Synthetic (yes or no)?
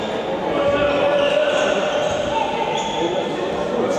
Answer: no